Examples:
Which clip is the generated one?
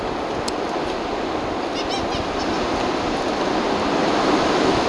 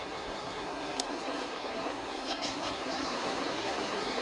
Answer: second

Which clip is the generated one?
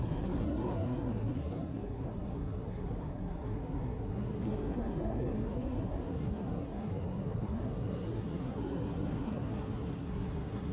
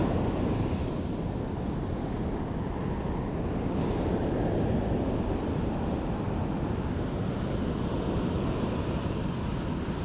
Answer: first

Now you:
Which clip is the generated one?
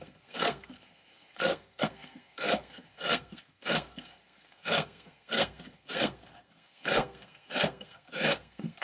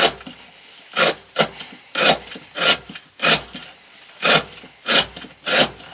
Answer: first